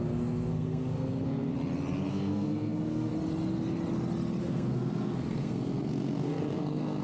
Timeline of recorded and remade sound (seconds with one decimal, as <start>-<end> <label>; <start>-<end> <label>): 0.0-1.5 remade; 1.5-2.1 recorded; 2.1-3.1 remade; 3.1-4.4 recorded; 4.4-7.0 remade